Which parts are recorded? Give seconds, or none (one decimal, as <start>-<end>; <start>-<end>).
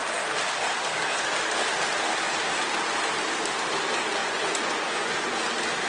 0.0-4.2; 5.3-5.9